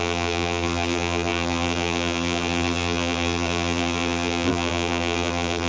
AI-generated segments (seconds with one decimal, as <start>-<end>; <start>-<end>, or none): 0.0-5.7